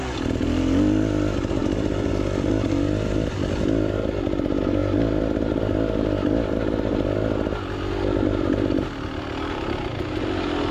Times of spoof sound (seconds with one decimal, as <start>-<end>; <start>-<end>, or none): none